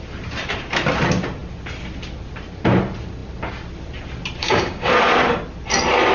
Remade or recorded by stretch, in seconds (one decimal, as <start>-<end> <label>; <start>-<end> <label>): 0.0-4.4 recorded; 4.4-4.9 remade; 4.9-6.1 recorded